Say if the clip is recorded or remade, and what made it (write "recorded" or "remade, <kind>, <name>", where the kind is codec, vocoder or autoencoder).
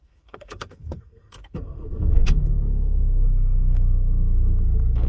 remade, codec, SNAC